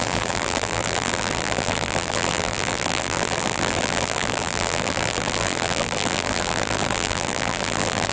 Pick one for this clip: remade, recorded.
remade